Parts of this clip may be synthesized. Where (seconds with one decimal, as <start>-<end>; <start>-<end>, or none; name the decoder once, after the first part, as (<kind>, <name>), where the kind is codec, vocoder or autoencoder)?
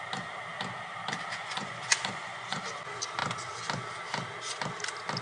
1.4-2.6 (vocoder, Vocos)